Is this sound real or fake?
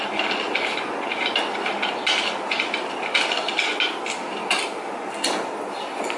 real